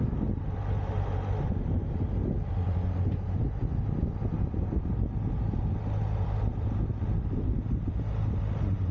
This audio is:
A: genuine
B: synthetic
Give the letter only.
A